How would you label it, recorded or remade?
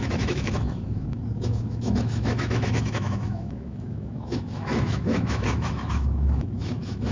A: remade